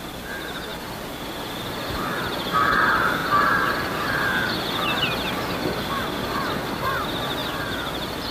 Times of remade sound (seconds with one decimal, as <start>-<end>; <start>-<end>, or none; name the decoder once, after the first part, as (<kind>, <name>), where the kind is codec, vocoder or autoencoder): none